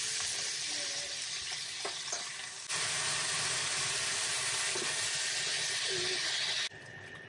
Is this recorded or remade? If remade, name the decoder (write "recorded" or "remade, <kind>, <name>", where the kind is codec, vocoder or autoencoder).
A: recorded